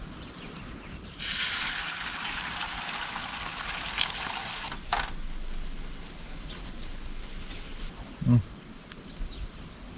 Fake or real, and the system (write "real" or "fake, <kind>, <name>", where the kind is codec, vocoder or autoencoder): real